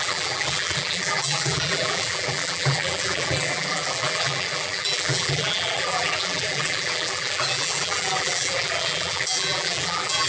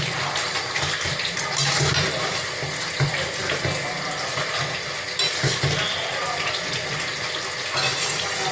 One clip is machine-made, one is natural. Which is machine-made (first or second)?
first